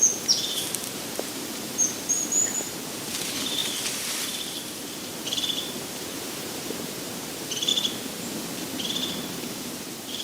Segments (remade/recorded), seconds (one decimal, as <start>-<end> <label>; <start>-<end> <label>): 0.0-7.7 remade; 7.7-9.1 recorded; 9.1-10.2 remade